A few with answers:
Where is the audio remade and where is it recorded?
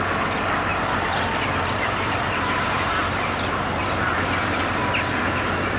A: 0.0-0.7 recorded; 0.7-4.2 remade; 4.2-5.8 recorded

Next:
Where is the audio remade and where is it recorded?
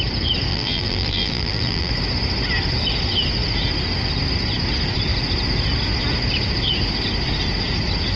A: 0.0-0.5 recorded; 0.5-1.9 remade; 1.9-8.2 recorded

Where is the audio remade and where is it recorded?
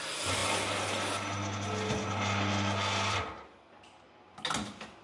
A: 0.0-5.0 recorded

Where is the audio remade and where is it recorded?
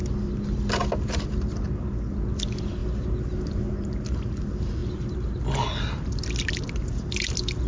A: 0.0-7.7 recorded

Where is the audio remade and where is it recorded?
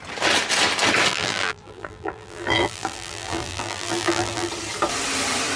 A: 0.0-1.1 recorded; 1.1-4.5 remade; 4.5-5.6 recorded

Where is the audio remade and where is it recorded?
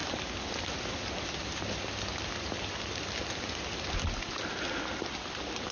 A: 0.0-5.7 recorded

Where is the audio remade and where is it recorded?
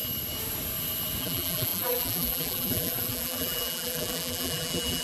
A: 0.0-1.2 recorded; 1.2-5.0 remade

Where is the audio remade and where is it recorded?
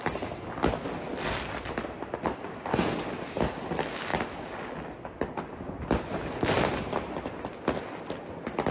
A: 0.0-1.1 recorded; 1.1-3.5 remade; 3.5-8.7 recorded